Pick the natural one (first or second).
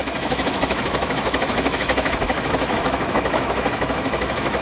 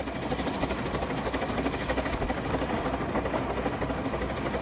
second